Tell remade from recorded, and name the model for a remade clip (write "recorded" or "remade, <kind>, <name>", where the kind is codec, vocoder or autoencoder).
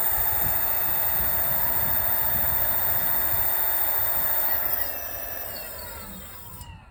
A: recorded